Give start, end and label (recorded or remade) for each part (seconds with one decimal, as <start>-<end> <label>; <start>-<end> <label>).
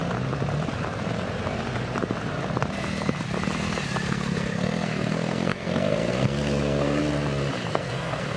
0.0-4.1 recorded; 4.1-7.0 remade; 7.0-7.7 recorded; 7.7-8.4 remade